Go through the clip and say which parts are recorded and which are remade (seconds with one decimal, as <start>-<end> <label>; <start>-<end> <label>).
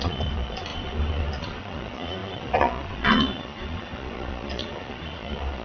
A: 0.0-5.6 remade